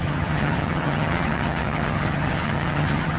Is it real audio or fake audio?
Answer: fake